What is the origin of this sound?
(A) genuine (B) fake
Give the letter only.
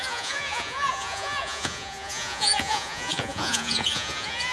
B